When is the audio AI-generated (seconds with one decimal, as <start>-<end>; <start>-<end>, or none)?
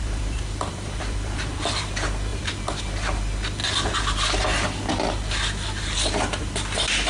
0.0-1.9; 2.3-2.8